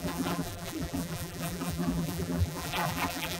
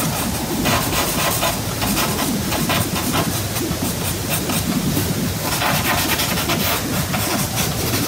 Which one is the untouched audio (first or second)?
second